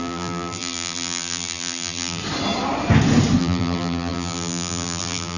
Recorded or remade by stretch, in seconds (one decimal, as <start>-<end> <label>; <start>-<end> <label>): 0.0-2.2 remade; 2.2-3.4 recorded; 3.4-5.4 remade